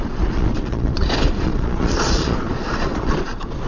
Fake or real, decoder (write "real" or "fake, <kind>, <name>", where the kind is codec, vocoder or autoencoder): fake, vocoder, Vocos